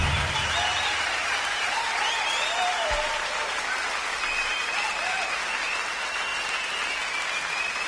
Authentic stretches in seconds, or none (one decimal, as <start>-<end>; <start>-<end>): 0.0-1.2; 3.6-4.9; 5.7-7.9